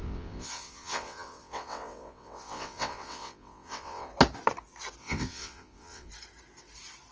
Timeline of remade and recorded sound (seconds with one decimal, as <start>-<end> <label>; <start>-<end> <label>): 0.0-4.1 remade; 4.1-5.0 recorded; 5.0-6.1 remade; 6.1-7.1 recorded